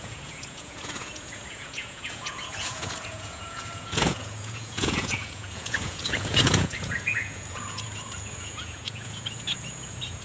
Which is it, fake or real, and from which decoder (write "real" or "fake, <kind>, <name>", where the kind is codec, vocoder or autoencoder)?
fake, vocoder, Vocos